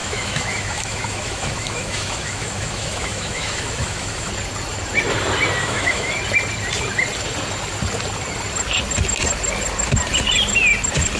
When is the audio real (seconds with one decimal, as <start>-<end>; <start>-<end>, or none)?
4.3-5.6; 6.1-11.2